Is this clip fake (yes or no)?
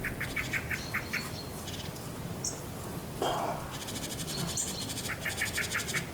no